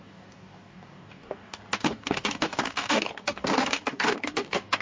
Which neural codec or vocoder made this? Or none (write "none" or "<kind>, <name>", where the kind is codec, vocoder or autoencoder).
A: codec, DAC